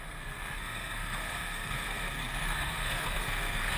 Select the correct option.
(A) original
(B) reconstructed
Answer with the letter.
B